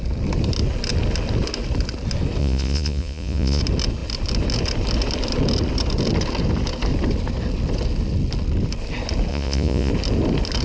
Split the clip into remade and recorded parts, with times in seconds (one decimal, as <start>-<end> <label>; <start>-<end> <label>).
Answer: 0.0-2.4 recorded; 2.4-3.6 remade; 3.6-9.3 recorded; 9.3-9.9 remade; 9.9-10.6 recorded